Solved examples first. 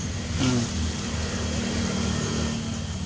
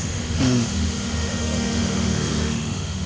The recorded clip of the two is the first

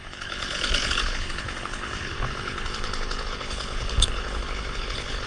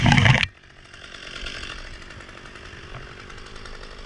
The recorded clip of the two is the second